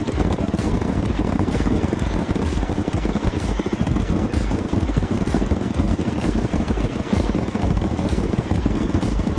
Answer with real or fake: fake